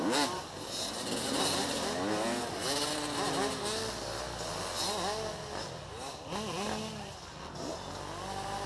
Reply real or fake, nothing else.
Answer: real